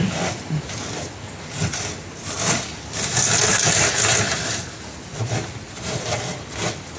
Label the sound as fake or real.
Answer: real